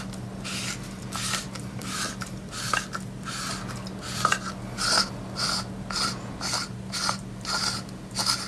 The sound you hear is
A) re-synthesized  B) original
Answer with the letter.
B